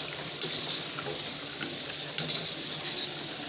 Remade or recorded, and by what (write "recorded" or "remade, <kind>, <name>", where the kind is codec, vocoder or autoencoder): recorded